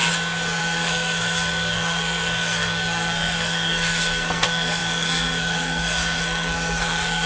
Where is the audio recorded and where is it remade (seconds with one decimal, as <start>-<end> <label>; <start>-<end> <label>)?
0.0-0.6 recorded; 0.6-7.3 remade